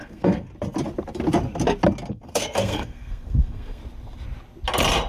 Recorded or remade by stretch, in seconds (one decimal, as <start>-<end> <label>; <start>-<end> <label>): 0.0-0.5 remade; 0.5-2.1 recorded; 2.1-3.8 remade; 3.8-5.1 recorded